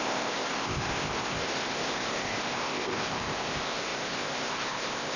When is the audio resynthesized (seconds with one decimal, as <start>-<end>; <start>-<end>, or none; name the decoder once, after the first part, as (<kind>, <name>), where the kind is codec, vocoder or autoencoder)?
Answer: 0.0-5.2 (codec, ZipCodec)